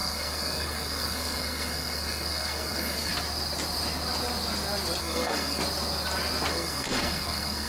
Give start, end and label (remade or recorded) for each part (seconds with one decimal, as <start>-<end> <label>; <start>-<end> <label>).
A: 0.0-3.1 remade; 3.1-5.0 recorded; 5.0-5.6 remade; 5.6-6.5 recorded; 6.5-7.7 remade